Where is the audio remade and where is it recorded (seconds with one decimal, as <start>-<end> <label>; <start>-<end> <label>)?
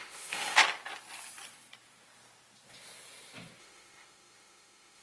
0.0-0.6 remade; 0.6-3.6 recorded; 3.6-5.0 remade